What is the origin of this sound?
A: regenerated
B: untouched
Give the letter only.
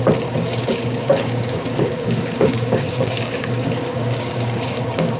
A